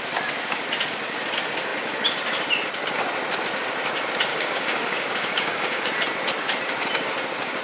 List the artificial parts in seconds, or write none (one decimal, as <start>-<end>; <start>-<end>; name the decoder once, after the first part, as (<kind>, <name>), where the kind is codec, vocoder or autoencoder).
4.3-5.9 (codec, DAC)